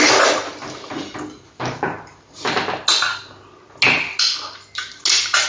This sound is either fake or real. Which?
real